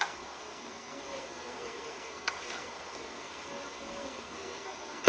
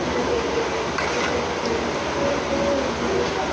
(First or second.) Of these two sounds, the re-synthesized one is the first